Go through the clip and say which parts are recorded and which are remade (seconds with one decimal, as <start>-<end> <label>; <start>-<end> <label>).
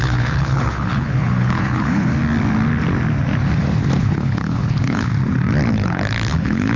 0.0-2.1 remade; 2.1-4.0 recorded; 4.0-5.1 remade; 5.1-5.7 recorded; 5.7-6.8 remade